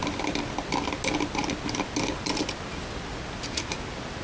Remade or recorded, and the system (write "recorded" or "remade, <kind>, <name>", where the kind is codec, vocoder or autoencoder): recorded